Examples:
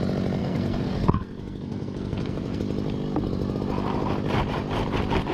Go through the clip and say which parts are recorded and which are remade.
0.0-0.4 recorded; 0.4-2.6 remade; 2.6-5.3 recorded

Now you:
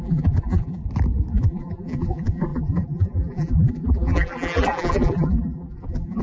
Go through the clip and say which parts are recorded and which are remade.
0.0-0.8 remade; 0.8-1.3 recorded; 1.3-6.2 remade

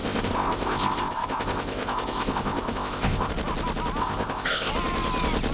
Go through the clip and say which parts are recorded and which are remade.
0.0-3.3 remade; 3.3-4.0 recorded; 4.0-4.7 remade; 4.7-5.5 recorded

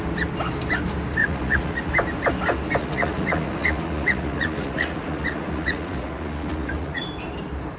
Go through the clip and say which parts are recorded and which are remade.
0.0-1.2 recorded; 1.2-1.9 remade; 1.9-2.8 recorded; 2.8-7.0 remade; 7.0-7.8 recorded